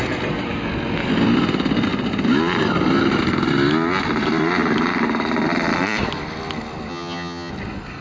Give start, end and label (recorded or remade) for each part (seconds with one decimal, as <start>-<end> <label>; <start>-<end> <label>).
0.0-6.9 recorded; 6.9-7.5 remade; 7.5-8.0 recorded